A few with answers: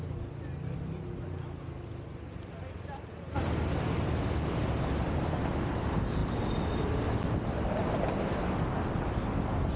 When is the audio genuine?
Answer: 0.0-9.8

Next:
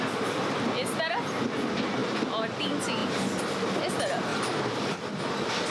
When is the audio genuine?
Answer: 0.0-5.7

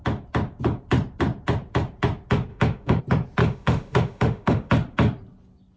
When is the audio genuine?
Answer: 0.0-2.5; 3.0-3.4; 4.7-5.8

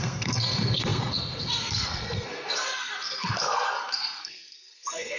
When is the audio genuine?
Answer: none

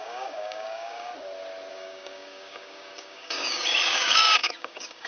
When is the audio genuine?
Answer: 1.1-1.7

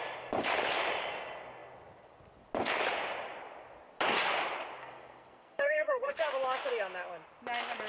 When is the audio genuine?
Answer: 0.0-4.8; 6.3-7.9

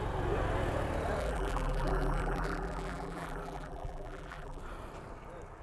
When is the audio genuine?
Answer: 0.0-1.2; 4.6-5.6

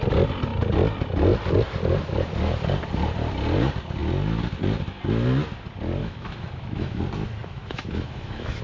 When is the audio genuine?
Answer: 0.0-6.0; 7.0-7.4